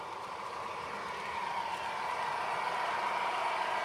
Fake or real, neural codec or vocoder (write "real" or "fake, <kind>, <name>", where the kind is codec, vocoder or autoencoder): fake, vocoder, BigVGAN v2